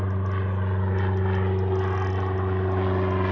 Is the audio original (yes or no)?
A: yes